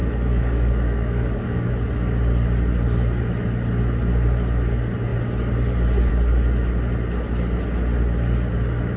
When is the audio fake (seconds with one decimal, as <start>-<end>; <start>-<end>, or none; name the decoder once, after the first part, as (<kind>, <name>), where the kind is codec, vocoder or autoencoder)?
0.0-1.7 (codec, DAC)